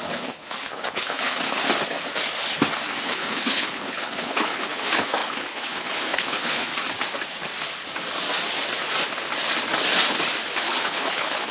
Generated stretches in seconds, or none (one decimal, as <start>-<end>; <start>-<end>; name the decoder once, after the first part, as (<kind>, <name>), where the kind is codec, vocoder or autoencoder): 0.0-1.6 (codec, HILCodec); 3.0-6.7; 10.6-11.5